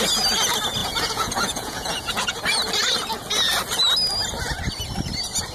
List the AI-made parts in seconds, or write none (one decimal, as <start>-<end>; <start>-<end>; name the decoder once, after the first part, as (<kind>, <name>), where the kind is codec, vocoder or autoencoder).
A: 0.8-2.4 (vocoder, Vocos)